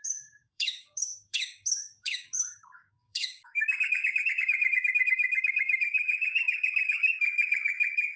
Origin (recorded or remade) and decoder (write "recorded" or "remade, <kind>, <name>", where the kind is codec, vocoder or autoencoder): remade, codec, DAC